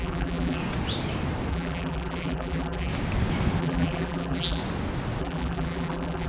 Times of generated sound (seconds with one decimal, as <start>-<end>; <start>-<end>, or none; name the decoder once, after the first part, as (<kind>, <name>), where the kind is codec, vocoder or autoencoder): 0.0-0.6 (vocoder, BigVGAN v2); 1.5-2.9; 3.6-4.6; 5.2-6.3